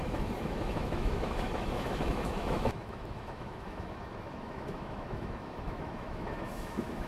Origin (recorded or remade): remade